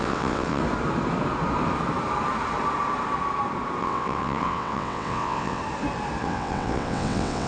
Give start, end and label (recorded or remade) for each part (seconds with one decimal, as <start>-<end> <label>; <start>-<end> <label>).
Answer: 0.0-0.6 remade; 0.6-3.8 recorded; 3.8-5.6 remade; 5.6-6.2 recorded; 6.2-7.5 remade